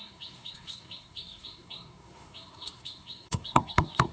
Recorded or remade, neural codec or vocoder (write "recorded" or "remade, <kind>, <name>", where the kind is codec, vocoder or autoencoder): remade, codec, SNAC